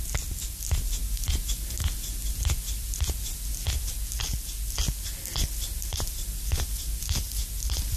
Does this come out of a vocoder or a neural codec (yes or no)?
no